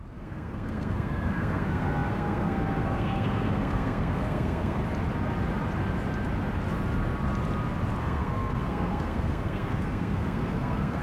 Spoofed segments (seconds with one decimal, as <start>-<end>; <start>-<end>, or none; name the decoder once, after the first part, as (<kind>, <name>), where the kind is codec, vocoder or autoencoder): 0.0-4.8 (codec, SNAC); 8.0-11.0